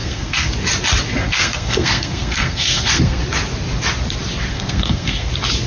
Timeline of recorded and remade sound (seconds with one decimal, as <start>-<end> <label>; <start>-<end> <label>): 0.0-0.5 remade; 0.5-1.2 recorded; 1.2-3.2 remade; 3.2-4.5 recorded; 4.5-5.3 remade; 5.3-5.7 recorded